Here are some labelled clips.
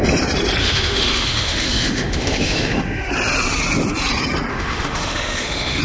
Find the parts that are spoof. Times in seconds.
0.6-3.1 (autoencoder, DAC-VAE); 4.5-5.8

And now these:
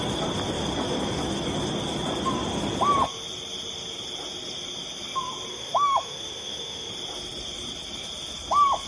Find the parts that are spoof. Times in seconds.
5.5-6.9 (autoencoder, DAC-VAE)